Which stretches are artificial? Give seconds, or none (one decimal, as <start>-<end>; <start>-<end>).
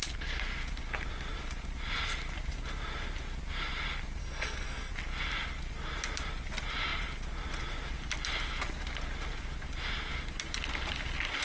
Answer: 4.2-4.9